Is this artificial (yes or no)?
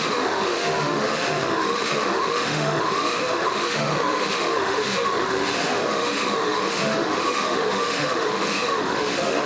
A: yes